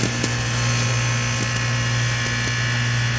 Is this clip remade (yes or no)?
no